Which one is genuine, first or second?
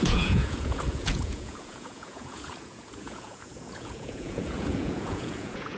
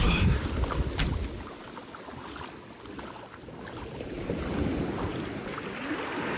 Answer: second